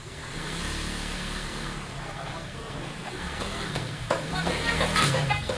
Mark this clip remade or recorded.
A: remade